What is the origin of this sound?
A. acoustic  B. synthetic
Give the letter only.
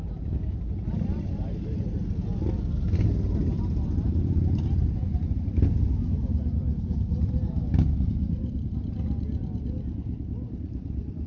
A